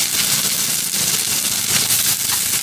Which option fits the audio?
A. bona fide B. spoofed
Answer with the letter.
A